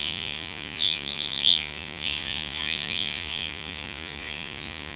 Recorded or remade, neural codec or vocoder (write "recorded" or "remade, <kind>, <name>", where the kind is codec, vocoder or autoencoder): remade, vocoder, Vocos